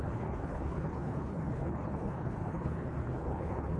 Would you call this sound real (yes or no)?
no